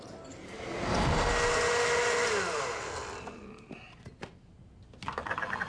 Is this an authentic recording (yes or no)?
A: yes